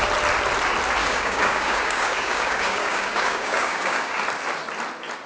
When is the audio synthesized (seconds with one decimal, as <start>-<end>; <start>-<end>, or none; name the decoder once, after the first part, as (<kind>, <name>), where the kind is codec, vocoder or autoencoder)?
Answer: 1.0-4.2 (codec, DAC)